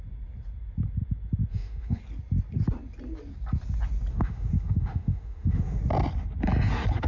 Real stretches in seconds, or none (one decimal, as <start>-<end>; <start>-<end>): 0.0-1.5; 2.0-4.1; 5.8-7.1

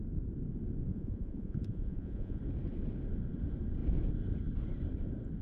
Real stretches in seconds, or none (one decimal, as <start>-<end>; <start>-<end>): 0.0-0.9; 2.4-5.4

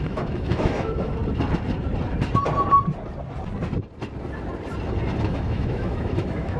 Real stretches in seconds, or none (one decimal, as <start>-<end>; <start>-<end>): 1.2-5.2

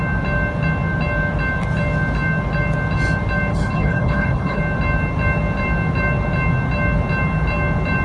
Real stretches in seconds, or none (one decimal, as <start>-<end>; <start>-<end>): 0.0-3.5; 4.6-8.0

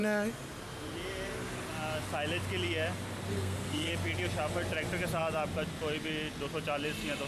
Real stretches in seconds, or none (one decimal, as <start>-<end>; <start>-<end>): 0.0-3.3; 3.9-7.3

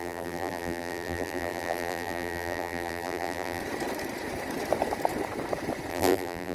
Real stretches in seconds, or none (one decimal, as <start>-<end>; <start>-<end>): 3.6-5.9